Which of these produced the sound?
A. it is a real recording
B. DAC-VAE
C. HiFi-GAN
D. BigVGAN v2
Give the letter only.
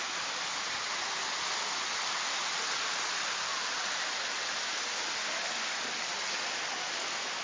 A